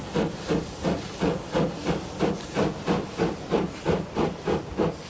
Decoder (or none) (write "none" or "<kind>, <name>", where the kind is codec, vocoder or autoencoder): none